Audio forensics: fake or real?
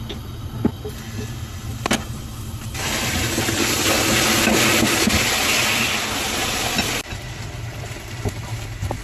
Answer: real